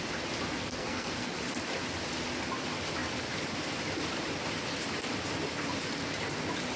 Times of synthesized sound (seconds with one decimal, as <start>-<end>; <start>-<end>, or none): 0.6-1.3